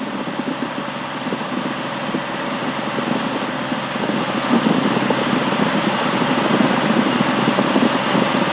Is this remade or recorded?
recorded